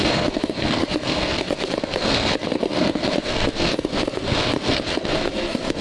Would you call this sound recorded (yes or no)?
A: no